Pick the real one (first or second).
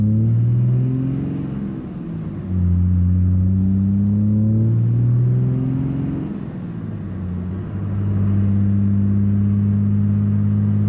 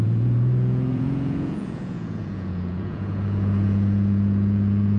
first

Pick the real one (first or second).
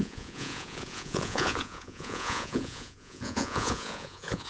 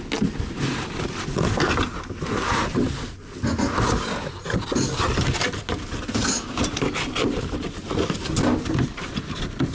second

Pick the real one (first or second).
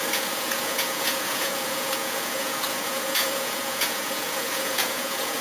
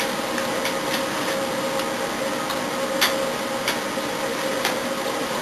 second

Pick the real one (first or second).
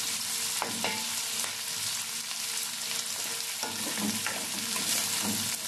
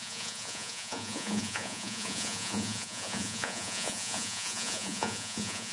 first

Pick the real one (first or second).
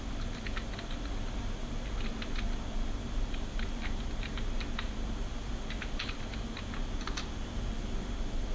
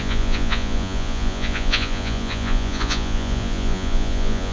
first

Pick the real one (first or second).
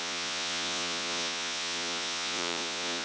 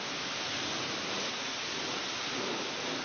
second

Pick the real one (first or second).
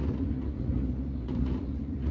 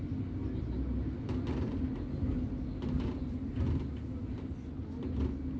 second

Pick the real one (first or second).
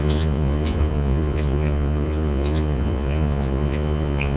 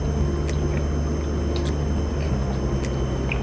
second